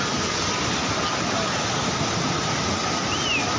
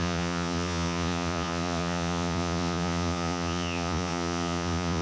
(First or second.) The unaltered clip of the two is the first